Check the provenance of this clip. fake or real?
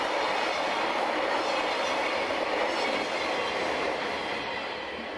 real